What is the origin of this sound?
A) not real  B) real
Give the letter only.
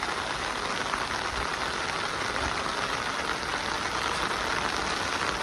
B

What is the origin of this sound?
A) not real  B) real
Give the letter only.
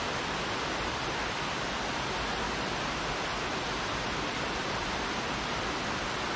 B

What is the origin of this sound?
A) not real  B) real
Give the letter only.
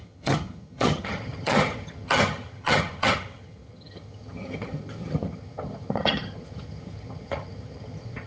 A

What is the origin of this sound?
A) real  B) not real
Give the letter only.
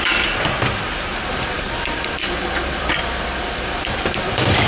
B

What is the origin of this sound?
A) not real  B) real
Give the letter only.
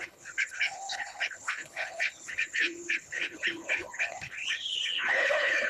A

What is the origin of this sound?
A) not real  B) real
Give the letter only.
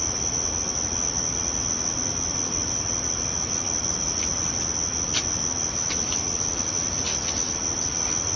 B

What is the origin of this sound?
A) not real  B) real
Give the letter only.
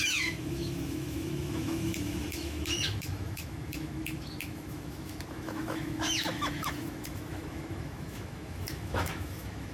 A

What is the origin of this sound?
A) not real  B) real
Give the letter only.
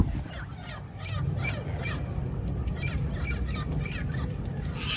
B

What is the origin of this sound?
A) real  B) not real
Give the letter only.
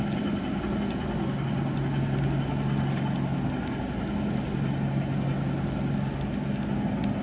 A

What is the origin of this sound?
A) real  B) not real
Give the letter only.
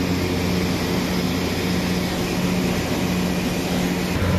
A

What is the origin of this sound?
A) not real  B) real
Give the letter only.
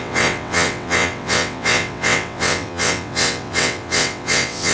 A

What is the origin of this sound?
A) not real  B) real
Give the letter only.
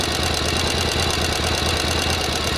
B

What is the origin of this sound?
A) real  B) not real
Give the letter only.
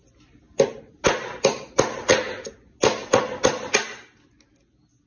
A